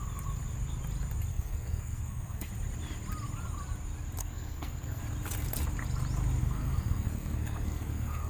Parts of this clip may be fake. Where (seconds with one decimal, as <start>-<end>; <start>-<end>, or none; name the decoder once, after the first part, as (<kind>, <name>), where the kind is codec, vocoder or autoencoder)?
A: 1.3-2.5 (codec, SNAC); 4.2-5.0; 6.4-8.3